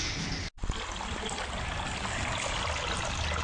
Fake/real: real